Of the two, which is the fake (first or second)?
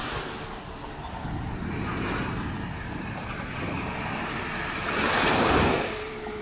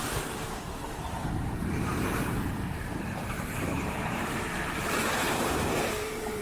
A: second